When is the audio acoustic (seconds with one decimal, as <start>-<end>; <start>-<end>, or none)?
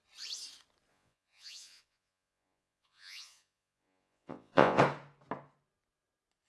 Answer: 0.0-0.9; 4.8-6.5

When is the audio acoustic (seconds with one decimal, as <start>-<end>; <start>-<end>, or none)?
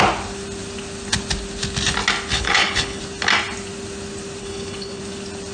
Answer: 0.0-2.3; 3.0-4.4; 5.0-5.5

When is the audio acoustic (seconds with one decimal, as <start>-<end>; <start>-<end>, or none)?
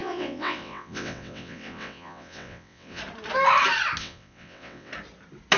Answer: 3.0-4.0; 4.9-5.6